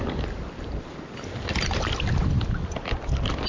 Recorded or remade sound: recorded